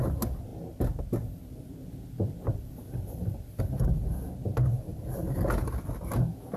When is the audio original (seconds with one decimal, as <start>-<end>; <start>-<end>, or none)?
0.0-1.8; 3.6-4.9; 5.9-6.6